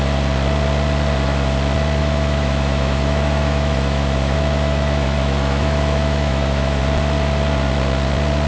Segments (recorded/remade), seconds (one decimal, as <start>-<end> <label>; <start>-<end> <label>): 0.0-2.0 recorded; 2.0-6.8 remade; 6.8-8.5 recorded

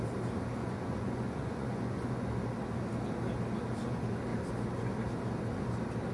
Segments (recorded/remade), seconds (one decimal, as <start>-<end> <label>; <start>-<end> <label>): 0.0-0.6 recorded; 0.6-2.4 remade; 2.4-6.1 recorded

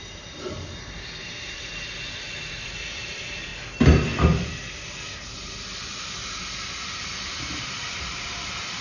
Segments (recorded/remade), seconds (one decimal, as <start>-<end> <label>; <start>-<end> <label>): 0.0-3.5 remade; 3.5-8.0 recorded; 8.0-8.8 remade

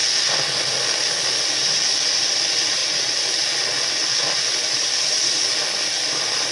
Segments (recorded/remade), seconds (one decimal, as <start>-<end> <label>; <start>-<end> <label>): 0.0-6.5 recorded

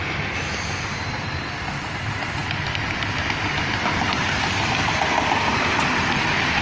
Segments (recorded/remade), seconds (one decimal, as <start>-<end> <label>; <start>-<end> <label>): 0.0-6.6 recorded